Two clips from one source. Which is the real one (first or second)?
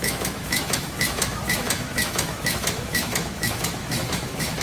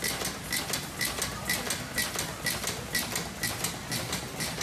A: second